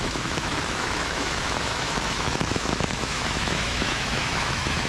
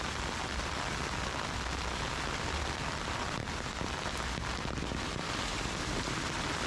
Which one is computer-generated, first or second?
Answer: first